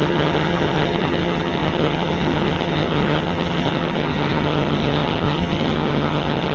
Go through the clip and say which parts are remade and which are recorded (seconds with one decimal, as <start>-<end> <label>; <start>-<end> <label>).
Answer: 0.0-6.5 remade